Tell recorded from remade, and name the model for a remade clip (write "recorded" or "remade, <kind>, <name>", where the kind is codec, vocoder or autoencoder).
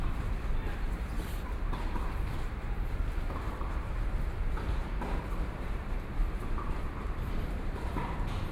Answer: remade, vocoder, BigVGAN v2